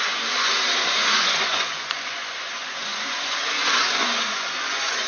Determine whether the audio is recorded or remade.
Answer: remade